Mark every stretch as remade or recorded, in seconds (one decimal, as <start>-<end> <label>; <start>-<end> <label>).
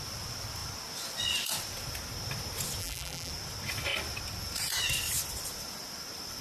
0.0-2.8 recorded; 2.8-3.3 remade; 3.3-6.4 recorded